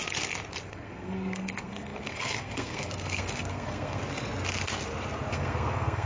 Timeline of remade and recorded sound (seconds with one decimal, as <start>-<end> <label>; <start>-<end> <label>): 0.0-0.6 recorded; 0.6-4.0 remade; 4.0-5.3 recorded; 5.3-6.1 remade